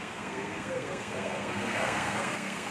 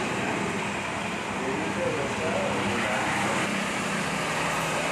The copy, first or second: first